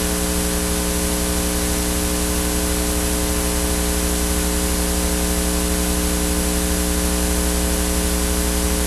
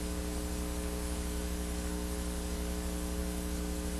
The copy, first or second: second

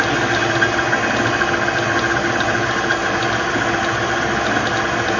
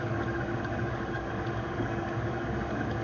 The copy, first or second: second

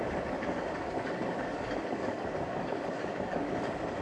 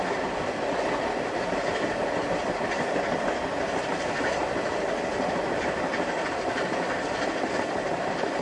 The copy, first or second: first